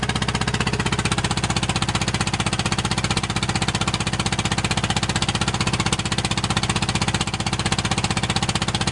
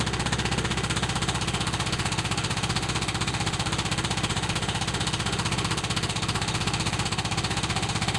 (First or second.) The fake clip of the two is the second